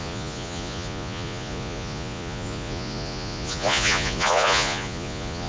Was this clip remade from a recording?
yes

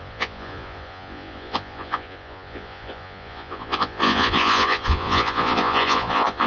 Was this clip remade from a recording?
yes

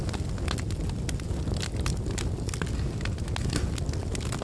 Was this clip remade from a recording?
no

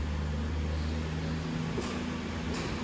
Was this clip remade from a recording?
no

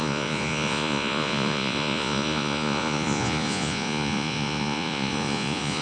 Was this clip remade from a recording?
yes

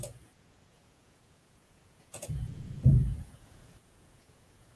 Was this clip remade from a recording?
yes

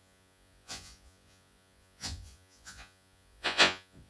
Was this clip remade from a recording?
yes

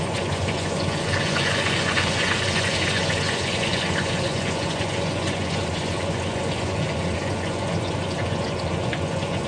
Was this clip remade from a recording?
yes